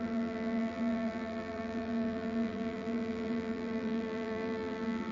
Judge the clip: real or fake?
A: fake